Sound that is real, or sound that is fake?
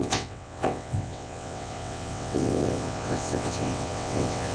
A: fake